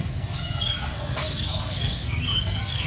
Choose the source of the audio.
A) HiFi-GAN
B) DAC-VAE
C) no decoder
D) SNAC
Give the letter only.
D